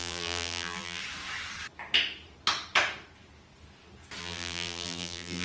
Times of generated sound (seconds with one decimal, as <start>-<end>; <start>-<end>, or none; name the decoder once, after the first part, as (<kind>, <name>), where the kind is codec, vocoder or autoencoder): 0.0-1.0 (vocoder, BigVGAN v2); 4.2-5.4